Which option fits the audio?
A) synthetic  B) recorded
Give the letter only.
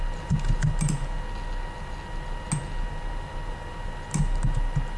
B